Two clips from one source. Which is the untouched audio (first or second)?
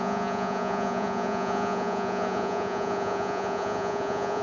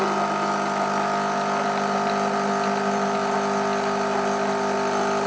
second